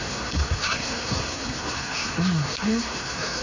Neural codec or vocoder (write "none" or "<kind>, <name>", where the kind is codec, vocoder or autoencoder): codec, SNAC